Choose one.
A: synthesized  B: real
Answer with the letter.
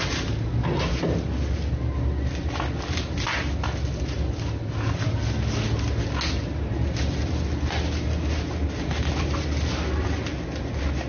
B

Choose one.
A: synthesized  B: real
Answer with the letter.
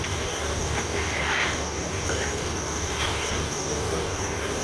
A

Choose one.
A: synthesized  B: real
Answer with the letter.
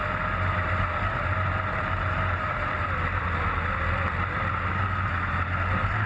B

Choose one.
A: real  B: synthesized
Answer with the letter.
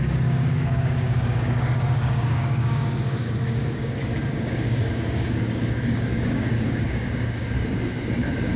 B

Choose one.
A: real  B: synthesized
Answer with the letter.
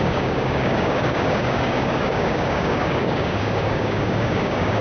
B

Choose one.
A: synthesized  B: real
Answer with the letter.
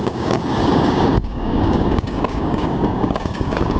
A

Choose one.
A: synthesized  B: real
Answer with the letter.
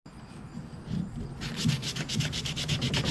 B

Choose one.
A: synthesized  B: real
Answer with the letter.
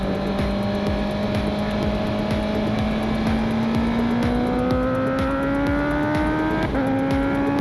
B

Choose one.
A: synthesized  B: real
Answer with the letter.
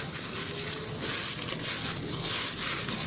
B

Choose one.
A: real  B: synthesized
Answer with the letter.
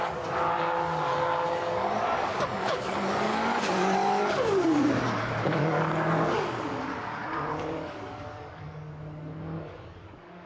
B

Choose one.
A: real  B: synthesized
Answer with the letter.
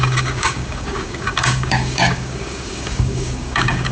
B